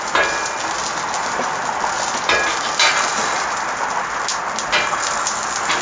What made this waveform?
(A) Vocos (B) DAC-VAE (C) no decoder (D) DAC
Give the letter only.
C